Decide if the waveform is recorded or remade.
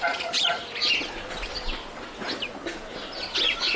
recorded